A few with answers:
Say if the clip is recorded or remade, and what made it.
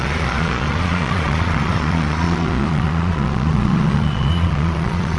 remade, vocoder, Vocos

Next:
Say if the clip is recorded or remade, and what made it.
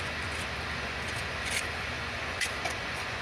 remade, vocoder, Vocos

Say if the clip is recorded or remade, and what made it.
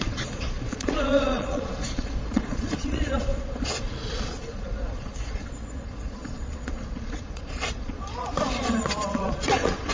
remade, vocoder, Vocos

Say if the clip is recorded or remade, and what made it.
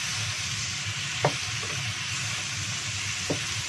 recorded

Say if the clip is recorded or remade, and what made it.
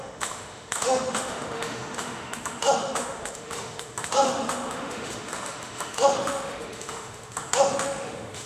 remade, autoencoder, DAC-VAE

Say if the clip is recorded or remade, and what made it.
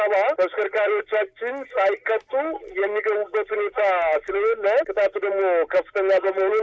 recorded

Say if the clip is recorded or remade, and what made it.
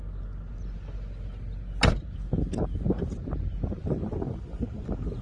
recorded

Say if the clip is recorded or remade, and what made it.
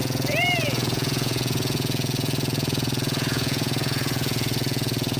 remade, vocoder, Vocos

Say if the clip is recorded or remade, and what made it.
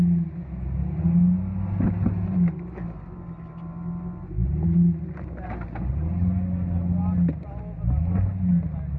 recorded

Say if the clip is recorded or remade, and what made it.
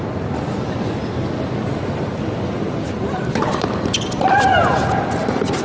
recorded